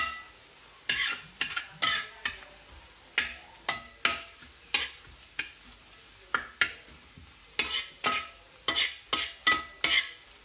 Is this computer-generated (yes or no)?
no